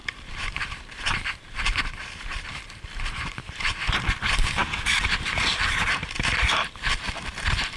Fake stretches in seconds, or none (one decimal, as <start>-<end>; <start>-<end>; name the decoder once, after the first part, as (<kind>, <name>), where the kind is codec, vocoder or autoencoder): 0.0-7.8 (vocoder, BigVGAN v2)